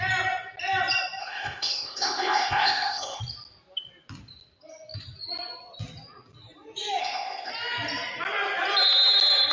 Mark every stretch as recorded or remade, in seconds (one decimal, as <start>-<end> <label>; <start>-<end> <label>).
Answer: 0.0-1.2 recorded; 1.2-3.2 remade; 3.2-7.0 recorded; 7.0-7.5 remade; 7.5-9.5 recorded